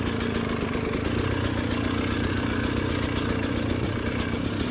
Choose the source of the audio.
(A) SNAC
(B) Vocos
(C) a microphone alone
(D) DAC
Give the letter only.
C